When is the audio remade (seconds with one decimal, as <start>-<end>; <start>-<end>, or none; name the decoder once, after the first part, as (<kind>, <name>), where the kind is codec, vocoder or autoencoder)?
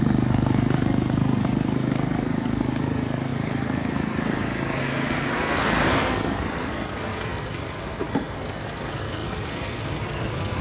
0.0-10.6 (codec, SNAC)